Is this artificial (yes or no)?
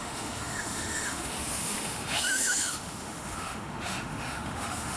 yes